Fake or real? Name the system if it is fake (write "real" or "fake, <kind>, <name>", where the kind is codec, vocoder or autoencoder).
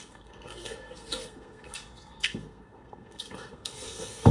fake, codec, SNAC